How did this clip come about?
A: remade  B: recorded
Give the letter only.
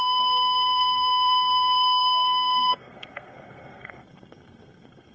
A